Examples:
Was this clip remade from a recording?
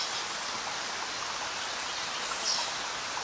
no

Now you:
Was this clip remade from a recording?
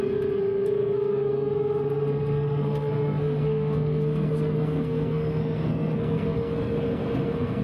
yes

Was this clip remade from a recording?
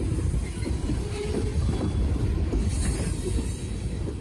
yes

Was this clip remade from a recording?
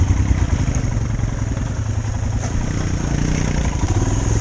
no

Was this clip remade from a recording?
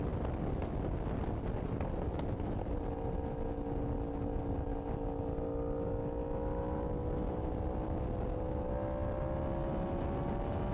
no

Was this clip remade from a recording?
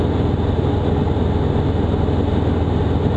no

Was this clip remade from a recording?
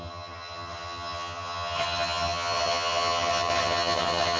yes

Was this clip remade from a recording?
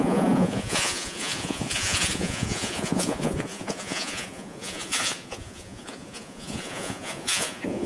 yes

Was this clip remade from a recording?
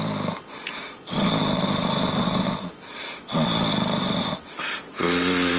no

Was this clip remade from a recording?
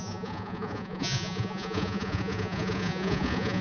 yes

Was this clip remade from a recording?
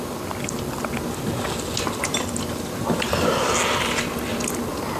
no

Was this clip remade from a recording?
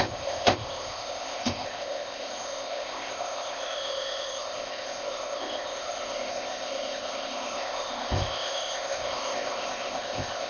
yes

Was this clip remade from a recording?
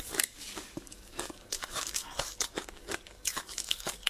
yes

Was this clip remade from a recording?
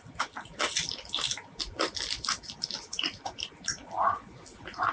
no